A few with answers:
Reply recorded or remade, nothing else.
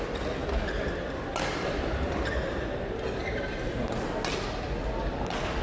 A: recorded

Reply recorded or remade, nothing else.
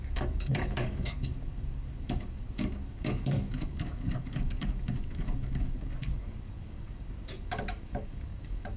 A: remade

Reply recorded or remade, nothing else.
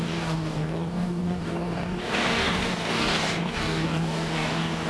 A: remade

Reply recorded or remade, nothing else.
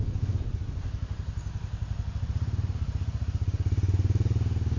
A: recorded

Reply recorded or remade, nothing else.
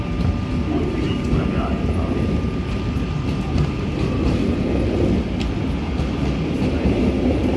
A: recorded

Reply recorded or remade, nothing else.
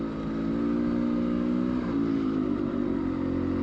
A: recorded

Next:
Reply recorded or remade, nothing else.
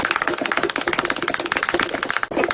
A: recorded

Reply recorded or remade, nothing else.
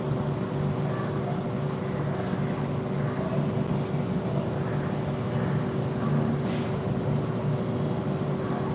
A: recorded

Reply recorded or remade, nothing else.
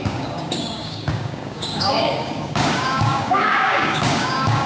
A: remade